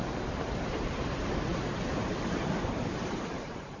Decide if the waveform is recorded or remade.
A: remade